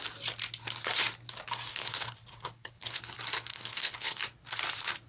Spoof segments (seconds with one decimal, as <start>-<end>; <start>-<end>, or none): 1.7-3.0; 3.5-4.2